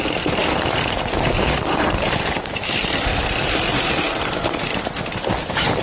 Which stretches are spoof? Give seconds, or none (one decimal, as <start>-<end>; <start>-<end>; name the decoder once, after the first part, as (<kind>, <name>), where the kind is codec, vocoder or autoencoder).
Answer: none